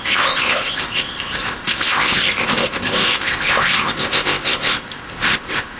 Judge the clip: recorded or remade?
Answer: remade